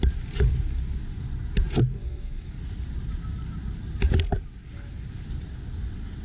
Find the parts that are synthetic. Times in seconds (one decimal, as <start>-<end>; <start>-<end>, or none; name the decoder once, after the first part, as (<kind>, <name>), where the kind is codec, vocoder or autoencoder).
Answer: 2.0-2.5 (autoencoder, DAC-VAE)